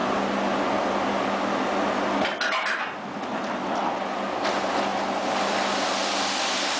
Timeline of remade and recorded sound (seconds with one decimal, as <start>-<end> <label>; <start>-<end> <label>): 0.0-6.8 recorded